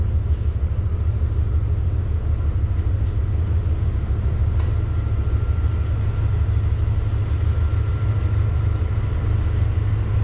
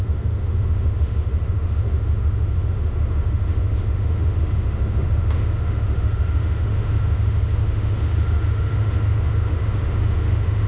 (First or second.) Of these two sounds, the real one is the first